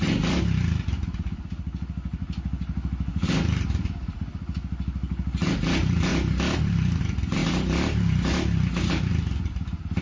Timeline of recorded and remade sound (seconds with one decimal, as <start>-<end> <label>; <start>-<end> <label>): 0.0-10.0 recorded